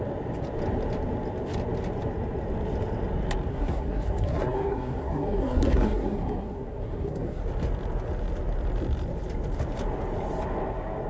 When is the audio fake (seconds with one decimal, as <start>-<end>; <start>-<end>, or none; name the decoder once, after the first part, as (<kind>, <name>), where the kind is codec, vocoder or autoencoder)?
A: 3.5-7.4 (codec, SNAC)